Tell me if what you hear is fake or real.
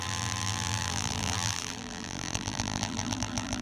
fake